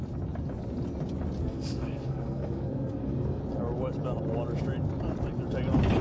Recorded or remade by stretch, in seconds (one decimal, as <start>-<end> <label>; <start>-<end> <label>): 0.0-1.4 recorded; 1.4-3.4 remade; 3.4-6.0 recorded